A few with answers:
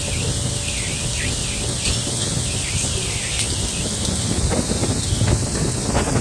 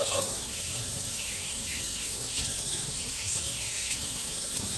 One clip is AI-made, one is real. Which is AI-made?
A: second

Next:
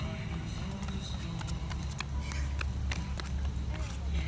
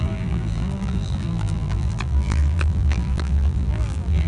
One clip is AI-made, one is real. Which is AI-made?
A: second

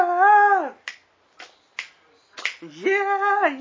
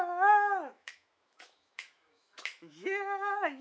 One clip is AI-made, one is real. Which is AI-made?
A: second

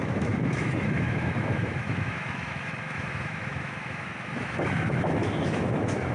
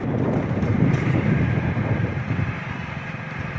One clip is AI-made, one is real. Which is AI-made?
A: first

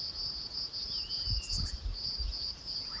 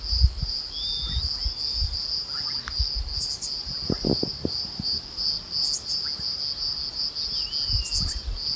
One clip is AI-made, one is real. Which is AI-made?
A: first